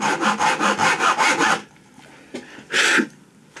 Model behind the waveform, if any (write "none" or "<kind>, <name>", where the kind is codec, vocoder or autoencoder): none